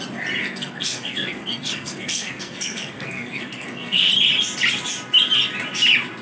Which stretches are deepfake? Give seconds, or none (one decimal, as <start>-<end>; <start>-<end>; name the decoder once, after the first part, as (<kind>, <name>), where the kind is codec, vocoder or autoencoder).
0.4-4.1 (codec, SNAC)